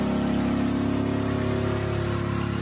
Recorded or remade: recorded